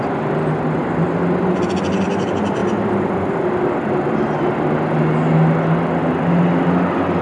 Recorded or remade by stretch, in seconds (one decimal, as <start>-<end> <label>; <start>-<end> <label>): 0.0-7.2 recorded